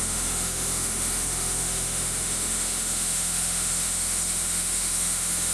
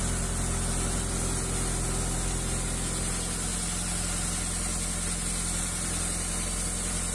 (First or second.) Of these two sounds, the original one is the second